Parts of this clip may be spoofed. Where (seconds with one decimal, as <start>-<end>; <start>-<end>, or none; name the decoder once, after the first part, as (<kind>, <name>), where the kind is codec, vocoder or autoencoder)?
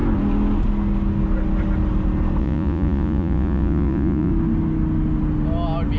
2.4-4.3 (vocoder, Vocos)